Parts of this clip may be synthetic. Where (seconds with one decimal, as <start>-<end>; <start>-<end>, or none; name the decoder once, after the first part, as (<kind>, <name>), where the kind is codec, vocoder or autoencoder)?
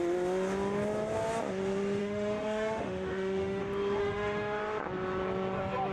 2.0-3.6 (autoencoder, DAC-VAE); 4.0-4.6